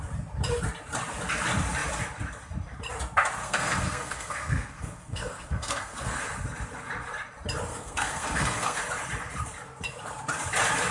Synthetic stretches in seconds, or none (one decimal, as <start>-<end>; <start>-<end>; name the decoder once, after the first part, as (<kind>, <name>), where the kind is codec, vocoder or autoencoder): 3.4-6.2 (codec, SNAC); 7.7-8.8